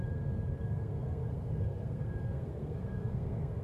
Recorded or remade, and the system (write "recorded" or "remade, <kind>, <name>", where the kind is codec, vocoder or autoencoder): remade, codec, SNAC